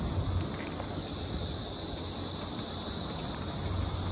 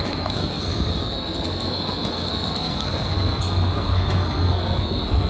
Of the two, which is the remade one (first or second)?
second